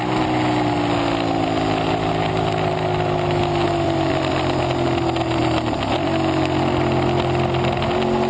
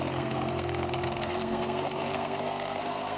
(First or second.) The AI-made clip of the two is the second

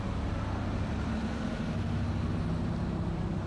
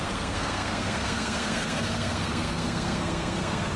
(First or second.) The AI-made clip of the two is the second